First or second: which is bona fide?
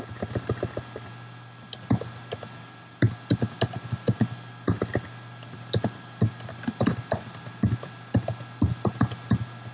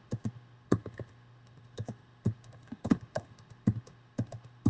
first